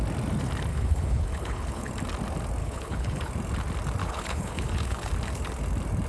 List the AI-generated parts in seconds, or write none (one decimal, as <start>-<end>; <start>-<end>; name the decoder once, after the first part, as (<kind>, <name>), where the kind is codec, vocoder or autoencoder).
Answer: 0.7-1.9 (codec, HILCodec); 2.6-3.3; 4.0-5.1

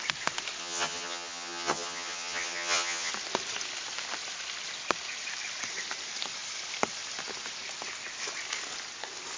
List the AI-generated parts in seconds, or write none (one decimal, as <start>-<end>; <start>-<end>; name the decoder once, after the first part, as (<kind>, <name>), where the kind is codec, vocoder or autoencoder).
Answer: 0.6-3.1 (vocoder, HiFi-GAN)

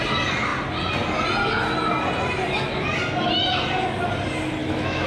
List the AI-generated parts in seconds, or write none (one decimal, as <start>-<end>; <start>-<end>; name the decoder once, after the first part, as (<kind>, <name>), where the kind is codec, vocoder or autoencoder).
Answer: 4.6-5.1 (autoencoder, DAC-VAE)

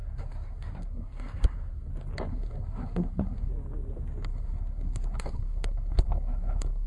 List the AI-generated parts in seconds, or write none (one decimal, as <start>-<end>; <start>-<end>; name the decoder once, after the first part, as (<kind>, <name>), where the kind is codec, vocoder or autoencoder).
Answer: 0.0-1.9 (codec, SNAC); 2.3-3.5; 4.3-6.9

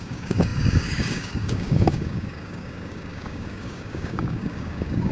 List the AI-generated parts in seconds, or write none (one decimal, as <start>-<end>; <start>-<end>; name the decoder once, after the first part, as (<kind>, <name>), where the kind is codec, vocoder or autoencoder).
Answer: 0.0-5.1 (codec, DAC)